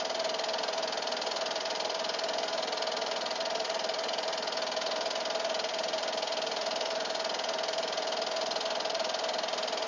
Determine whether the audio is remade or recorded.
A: recorded